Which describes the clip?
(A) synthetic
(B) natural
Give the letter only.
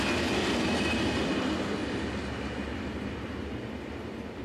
B